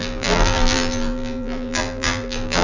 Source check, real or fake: fake